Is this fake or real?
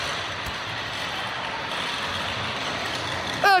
real